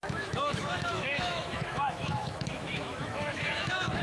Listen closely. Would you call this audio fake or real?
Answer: fake